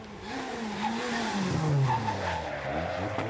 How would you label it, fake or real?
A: real